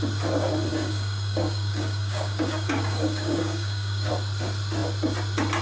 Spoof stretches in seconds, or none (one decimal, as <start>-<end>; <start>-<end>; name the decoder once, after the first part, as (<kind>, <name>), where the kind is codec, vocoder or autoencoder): 0.7-4.1 (codec, DAC)